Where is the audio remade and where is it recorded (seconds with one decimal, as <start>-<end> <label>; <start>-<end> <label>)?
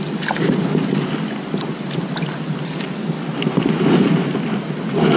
0.0-5.2 recorded